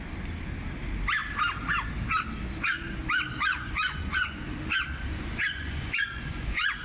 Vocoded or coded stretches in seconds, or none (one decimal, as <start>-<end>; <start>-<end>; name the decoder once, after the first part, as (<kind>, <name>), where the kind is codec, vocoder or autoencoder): 3.5-4.5 (vocoder, Vocos); 5.1-6.8